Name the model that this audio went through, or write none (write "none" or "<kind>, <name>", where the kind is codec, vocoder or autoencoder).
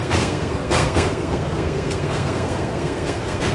codec, SNAC